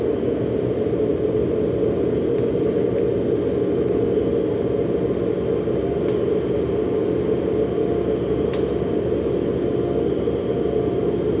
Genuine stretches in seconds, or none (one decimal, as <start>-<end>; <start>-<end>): 0.0-11.4